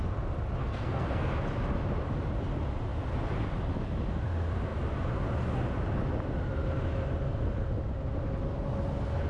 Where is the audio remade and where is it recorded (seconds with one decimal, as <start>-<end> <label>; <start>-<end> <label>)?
0.0-0.6 recorded; 0.6-1.3 remade; 1.3-9.3 recorded